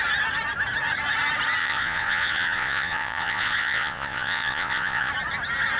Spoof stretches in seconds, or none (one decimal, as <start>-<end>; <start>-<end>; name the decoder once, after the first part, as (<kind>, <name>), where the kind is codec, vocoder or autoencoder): 1.6-5.1 (vocoder, Vocos)